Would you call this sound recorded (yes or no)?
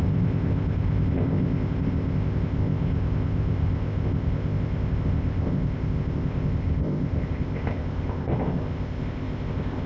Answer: no